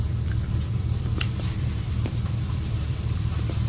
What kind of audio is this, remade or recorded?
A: remade